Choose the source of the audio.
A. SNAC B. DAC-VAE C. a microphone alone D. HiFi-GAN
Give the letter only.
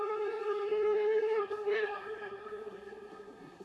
A